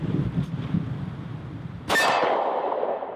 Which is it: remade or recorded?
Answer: remade